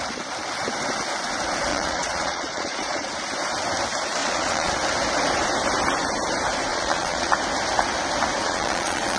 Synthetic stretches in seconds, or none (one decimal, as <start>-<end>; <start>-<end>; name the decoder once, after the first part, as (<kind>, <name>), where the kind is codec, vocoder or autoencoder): 1.7-3.1 (vocoder, Vocos); 4.2-4.7; 6.7-7.3; 8.4-9.2